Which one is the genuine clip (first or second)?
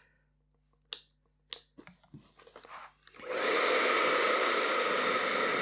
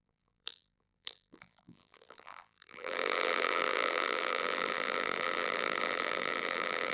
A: first